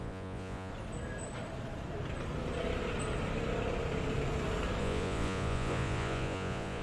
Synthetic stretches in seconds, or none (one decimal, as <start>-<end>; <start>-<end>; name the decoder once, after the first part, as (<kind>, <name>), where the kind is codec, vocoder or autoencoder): 0.0-0.7 (vocoder, Vocos); 4.8-6.8